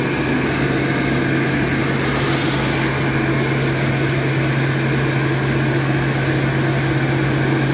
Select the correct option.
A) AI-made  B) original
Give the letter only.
B